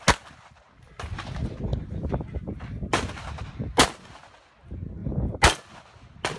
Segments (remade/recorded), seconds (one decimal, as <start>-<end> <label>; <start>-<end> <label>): 0.0-6.4 recorded